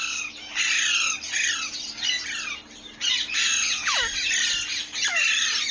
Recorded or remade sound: recorded